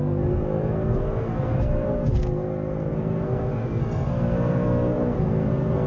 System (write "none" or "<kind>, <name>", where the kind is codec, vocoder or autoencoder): codec, SNAC